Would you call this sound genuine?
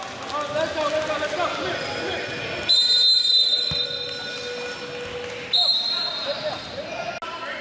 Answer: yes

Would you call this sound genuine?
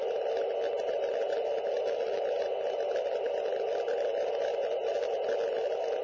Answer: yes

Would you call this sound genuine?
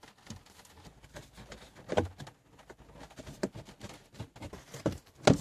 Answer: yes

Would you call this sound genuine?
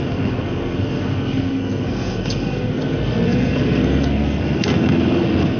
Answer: no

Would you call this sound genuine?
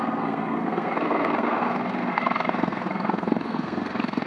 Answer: no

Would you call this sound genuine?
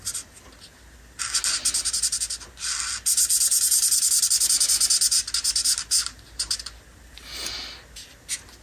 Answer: yes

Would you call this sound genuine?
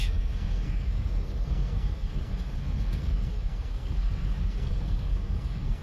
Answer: no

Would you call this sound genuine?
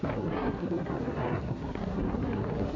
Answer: no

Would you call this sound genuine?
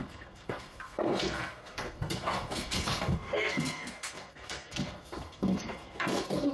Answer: no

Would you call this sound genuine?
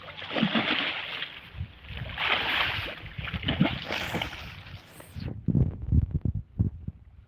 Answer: yes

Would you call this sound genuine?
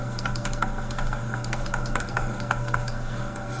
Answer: no